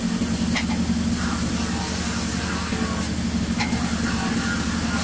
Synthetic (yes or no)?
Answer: no